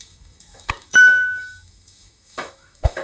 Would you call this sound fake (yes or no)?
yes